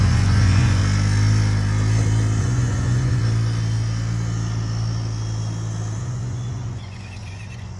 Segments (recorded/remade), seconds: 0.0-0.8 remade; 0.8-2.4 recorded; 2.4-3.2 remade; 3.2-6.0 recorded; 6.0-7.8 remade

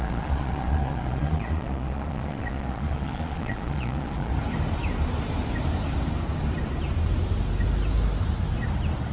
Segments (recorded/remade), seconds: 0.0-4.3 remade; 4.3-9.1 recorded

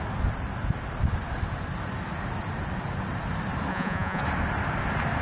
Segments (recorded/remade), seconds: 0.0-3.7 recorded; 3.7-4.2 remade; 4.2-5.2 recorded

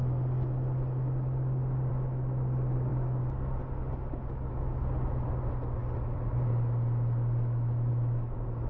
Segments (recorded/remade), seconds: 0.0-8.7 recorded

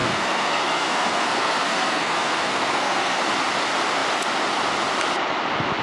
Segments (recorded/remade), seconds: 0.0-3.2 remade; 3.2-5.8 recorded